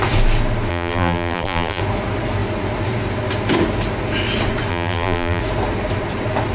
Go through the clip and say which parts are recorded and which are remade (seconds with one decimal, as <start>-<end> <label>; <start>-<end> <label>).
0.0-0.7 recorded; 0.7-1.8 remade; 1.8-4.7 recorded; 4.7-5.4 remade; 5.4-6.5 recorded